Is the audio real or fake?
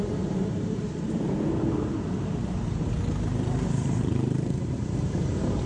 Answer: fake